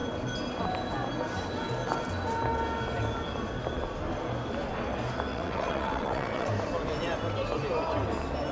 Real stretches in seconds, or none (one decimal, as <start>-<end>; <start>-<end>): 0.0-5.3; 6.5-8.5